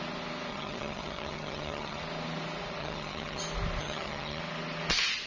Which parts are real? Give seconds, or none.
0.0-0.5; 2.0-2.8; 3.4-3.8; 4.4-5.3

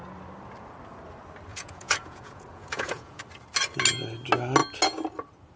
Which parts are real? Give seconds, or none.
0.0-1.5; 3.2-5.6

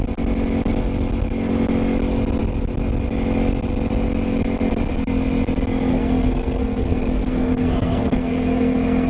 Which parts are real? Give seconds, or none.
0.0-5.9